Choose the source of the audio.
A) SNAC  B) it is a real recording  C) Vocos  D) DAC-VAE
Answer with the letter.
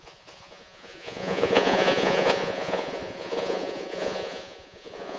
C